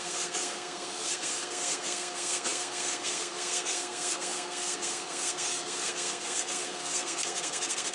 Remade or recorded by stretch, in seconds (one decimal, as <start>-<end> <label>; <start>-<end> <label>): 0.0-7.9 remade